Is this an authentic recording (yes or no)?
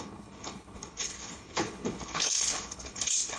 no